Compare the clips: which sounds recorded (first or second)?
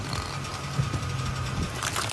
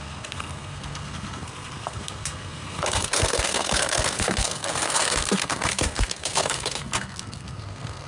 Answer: first